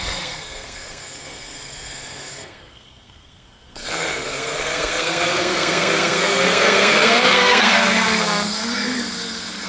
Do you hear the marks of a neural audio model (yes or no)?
yes